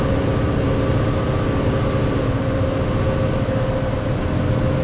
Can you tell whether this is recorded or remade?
recorded